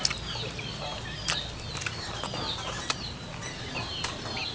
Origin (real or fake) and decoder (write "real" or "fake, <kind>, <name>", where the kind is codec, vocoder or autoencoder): real